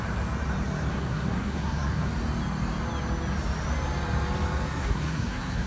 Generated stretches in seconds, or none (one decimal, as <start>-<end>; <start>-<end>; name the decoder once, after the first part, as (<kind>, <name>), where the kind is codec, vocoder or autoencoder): 0.9-2.1 (codec, SNAC); 4.8-5.7